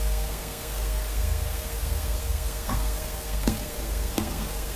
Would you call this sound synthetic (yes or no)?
yes